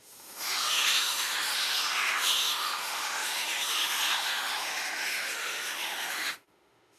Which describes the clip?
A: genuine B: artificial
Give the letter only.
B